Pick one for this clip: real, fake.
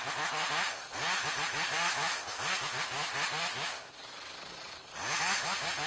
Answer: real